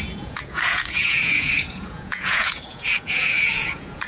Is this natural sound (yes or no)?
no